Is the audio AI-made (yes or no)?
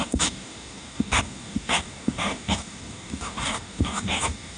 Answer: yes